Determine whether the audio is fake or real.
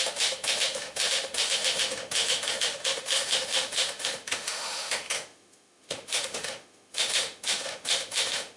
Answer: fake